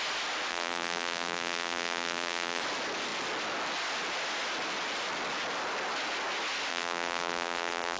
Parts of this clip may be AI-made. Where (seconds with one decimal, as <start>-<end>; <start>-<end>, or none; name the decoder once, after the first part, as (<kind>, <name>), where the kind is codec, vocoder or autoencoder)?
0.5-2.6 (vocoder, BigVGAN v2); 6.7-8.0